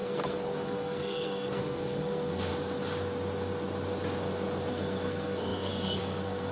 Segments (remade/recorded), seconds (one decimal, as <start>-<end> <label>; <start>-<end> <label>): 0.0-2.5 remade; 2.5-4.7 recorded; 4.7-6.5 remade

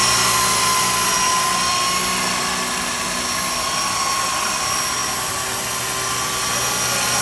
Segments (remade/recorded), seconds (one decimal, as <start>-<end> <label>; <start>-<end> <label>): 0.0-7.2 recorded

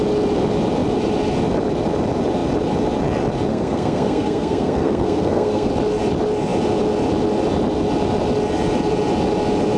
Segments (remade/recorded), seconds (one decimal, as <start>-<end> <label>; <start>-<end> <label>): 0.0-3.5 recorded; 3.5-5.7 remade; 5.7-9.8 recorded

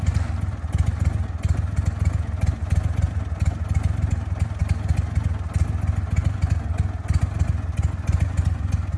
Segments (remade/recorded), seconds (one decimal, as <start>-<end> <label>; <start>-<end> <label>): 0.0-9.0 recorded

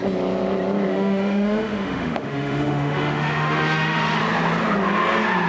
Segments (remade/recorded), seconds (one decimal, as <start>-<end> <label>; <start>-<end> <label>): 0.0-0.9 recorded; 0.9-4.2 remade; 4.2-5.5 recorded